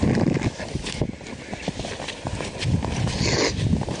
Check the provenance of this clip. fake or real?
real